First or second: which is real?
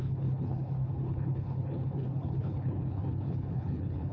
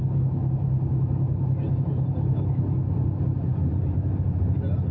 second